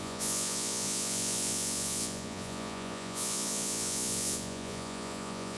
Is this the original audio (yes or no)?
no